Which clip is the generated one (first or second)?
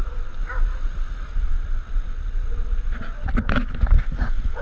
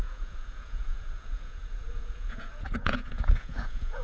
second